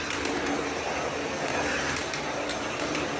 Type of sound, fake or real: real